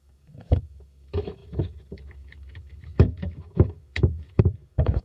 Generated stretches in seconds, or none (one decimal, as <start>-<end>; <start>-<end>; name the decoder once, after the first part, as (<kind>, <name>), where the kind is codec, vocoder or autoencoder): 0.0-5.0 (autoencoder, DAC-VAE)